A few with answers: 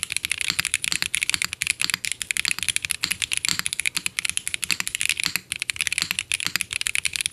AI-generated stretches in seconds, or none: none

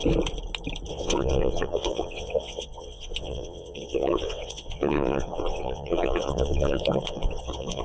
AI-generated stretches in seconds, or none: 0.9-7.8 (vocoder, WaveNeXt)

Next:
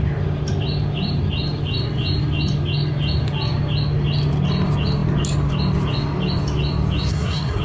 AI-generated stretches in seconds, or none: 7.1-7.6 (codec, SNAC)

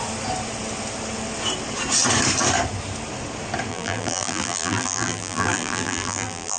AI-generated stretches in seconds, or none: 3.7-6.6 (vocoder, BigVGAN v2)

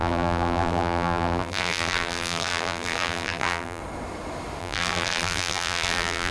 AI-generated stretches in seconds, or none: 0.0-3.8 (vocoder, BigVGAN v2); 4.6-6.3

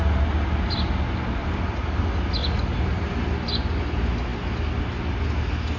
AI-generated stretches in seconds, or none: 1.4-2.0 (vocoder, BigVGAN v2); 2.4-3.5

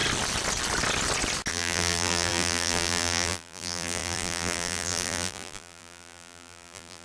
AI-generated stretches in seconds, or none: 1.5-7.0 (vocoder, BigVGAN v2)